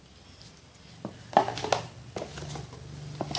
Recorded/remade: recorded